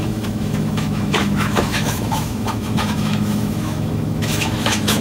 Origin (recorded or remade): remade